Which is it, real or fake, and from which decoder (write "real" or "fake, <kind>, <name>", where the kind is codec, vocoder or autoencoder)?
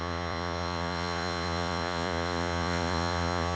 fake, vocoder, Vocos